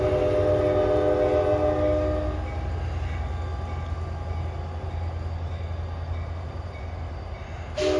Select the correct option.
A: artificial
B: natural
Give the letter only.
B